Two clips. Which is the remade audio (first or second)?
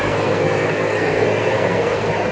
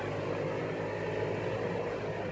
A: first